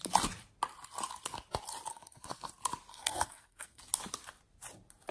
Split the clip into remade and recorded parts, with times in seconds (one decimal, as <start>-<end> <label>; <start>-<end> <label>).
0.0-1.9 recorded; 1.9-2.5 remade; 2.5-2.9 recorded; 2.9-3.8 remade; 3.8-5.1 recorded

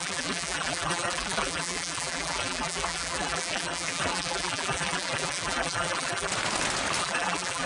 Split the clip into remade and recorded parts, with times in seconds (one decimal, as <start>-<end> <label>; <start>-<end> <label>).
0.0-6.3 remade; 6.3-7.0 recorded; 7.0-7.7 remade

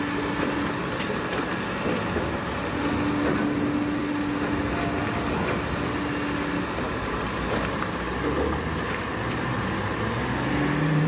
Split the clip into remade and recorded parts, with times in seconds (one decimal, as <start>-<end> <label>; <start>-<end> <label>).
0.0-11.1 recorded

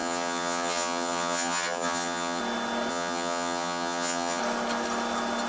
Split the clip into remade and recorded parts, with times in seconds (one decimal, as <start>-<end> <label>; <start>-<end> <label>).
0.0-2.4 remade; 2.4-2.9 recorded; 2.9-4.4 remade; 4.4-5.5 recorded

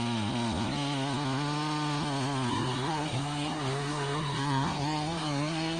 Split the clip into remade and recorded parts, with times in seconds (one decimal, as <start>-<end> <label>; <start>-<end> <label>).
0.0-2.5 recorded; 2.5-5.8 remade

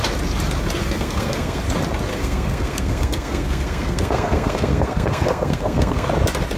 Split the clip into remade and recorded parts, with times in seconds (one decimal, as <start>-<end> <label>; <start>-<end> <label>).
0.0-0.8 recorded; 0.8-1.6 remade; 1.6-2.1 recorded; 2.1-6.1 remade; 6.1-6.6 recorded

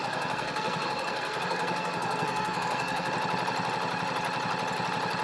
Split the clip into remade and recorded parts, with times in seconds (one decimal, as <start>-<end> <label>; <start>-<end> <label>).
0.0-3.1 remade; 3.1-5.2 recorded

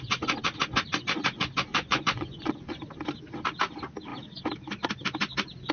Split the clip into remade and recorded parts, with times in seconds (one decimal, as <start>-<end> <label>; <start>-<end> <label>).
0.0-1.7 recorded; 1.7-2.8 remade; 2.8-5.7 recorded